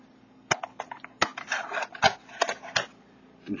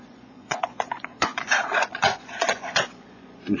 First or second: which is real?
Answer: first